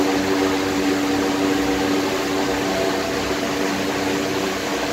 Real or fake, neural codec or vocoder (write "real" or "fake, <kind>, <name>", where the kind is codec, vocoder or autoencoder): real